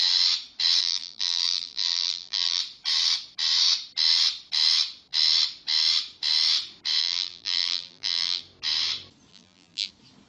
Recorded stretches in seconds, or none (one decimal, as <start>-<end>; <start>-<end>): 0.0-0.8; 2.6-7.0; 8.4-9.3; 9.9-10.3